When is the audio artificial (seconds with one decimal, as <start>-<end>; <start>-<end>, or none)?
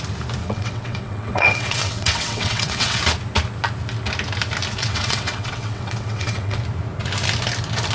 0.4-3.0; 4.8-6.6